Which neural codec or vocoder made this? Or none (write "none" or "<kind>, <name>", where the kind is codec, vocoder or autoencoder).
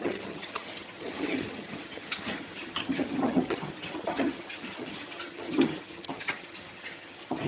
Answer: vocoder, HiFi-GAN